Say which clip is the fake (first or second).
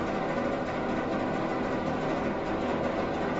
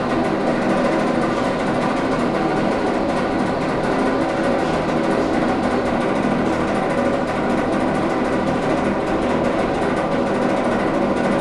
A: second